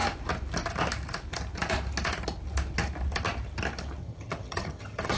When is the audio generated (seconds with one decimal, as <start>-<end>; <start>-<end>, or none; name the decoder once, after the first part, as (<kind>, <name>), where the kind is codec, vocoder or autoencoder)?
4.0-5.2 (vocoder, HiFi-GAN)